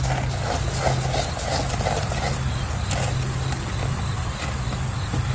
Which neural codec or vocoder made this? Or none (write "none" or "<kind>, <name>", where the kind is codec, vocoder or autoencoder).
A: none